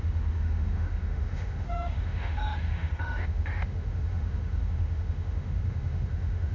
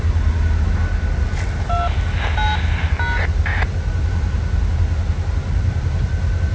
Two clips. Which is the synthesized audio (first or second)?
first